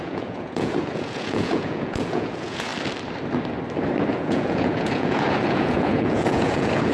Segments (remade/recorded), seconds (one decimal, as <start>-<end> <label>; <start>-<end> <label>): 0.0-2.7 remade; 2.7-4.1 recorded; 4.1-6.9 remade